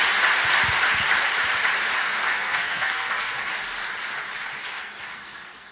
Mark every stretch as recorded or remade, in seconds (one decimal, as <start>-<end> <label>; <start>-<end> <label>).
0.0-2.0 recorded; 2.0-3.5 remade; 3.5-4.6 recorded; 4.6-5.7 remade